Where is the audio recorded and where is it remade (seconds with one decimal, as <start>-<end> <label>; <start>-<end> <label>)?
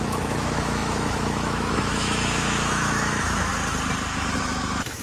0.0-3.5 remade; 3.5-4.4 recorded; 4.4-5.0 remade